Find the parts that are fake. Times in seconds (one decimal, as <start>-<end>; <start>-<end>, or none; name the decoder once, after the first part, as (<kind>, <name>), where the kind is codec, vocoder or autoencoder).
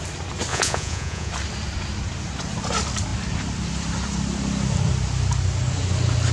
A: 0.5-1.3 (vocoder, Vocos)